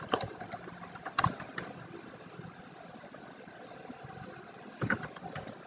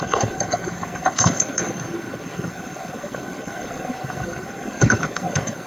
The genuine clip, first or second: first